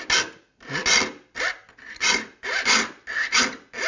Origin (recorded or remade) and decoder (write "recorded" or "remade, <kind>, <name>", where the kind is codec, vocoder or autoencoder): recorded